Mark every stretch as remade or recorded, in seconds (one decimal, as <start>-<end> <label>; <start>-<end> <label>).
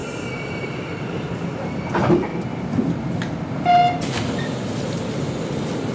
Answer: 0.0-1.8 remade; 1.8-5.9 recorded